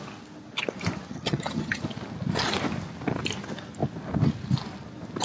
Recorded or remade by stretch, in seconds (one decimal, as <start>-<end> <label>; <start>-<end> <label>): 0.0-1.1 recorded; 1.1-1.8 remade; 1.8-5.2 recorded